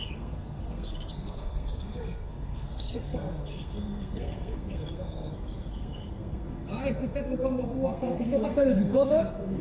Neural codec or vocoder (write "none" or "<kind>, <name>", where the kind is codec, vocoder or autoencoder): codec, SNAC